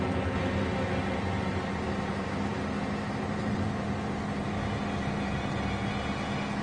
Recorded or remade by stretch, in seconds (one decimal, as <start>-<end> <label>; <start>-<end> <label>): 0.0-6.6 recorded